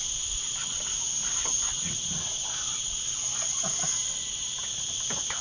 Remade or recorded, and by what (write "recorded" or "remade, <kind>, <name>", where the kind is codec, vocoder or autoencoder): recorded